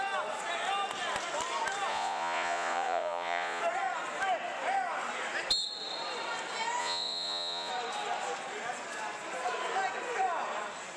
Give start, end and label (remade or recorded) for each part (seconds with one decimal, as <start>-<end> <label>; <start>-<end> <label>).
0.0-1.9 recorded; 1.9-3.6 remade; 3.6-6.8 recorded; 6.8-7.7 remade; 7.7-11.0 recorded